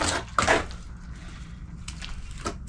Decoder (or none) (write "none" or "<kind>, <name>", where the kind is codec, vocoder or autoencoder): none